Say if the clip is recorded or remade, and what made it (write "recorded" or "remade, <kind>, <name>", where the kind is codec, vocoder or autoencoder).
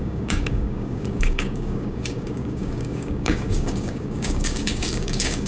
remade, codec, DAC